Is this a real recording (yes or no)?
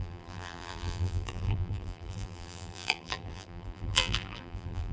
no